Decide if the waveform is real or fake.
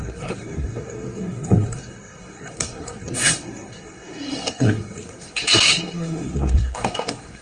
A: fake